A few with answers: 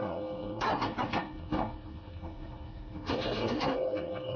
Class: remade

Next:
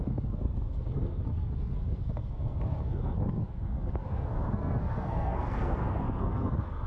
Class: remade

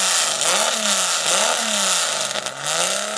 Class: recorded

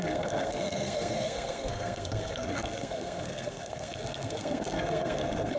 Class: remade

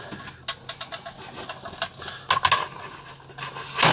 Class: recorded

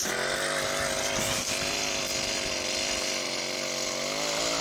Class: recorded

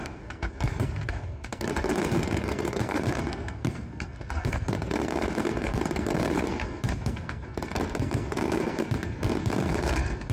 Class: remade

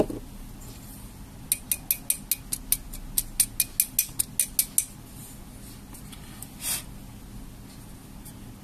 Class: recorded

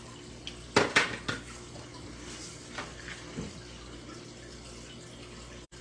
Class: recorded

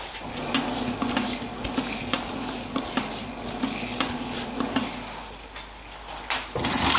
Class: recorded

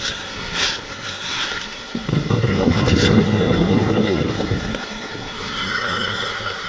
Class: remade